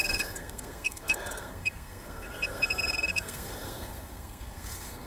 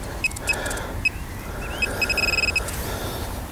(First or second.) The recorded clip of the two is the second